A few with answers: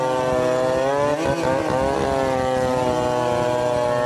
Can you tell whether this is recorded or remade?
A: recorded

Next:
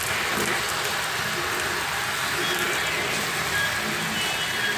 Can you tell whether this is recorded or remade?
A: recorded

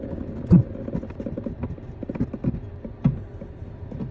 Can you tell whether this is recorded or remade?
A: recorded